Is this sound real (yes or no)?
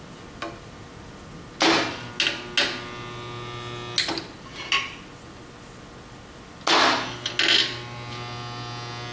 yes